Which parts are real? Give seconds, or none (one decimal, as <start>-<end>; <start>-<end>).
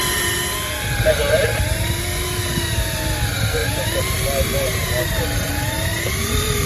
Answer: 0.0-3.6; 5.2-5.9